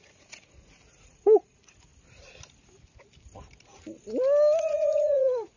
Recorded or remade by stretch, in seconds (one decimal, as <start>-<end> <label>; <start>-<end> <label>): 0.0-1.9 remade; 1.9-4.6 recorded; 4.6-5.6 remade